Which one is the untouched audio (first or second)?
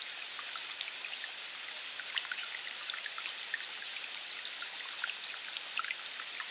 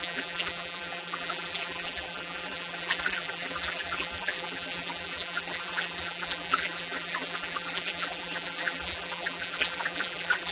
first